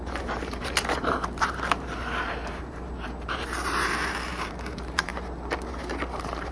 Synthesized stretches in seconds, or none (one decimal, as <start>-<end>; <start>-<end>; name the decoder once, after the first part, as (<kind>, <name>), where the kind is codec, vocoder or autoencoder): 0.0-5.1 (vocoder, BigVGAN v2); 5.7-6.5